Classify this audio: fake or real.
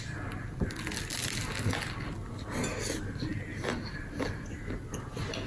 real